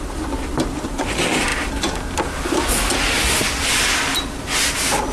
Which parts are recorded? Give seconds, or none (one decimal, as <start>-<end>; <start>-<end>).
0.0-5.1